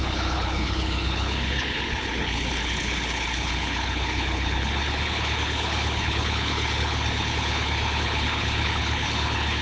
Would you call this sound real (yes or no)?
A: no